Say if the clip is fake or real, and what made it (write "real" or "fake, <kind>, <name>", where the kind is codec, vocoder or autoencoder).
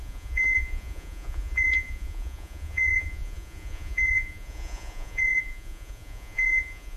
fake, vocoder, Vocos